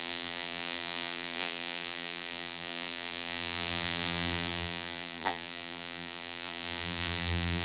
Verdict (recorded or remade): remade